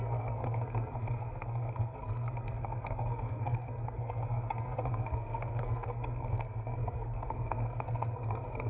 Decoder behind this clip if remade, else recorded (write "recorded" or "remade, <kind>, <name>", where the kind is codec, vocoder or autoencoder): remade, codec, SNAC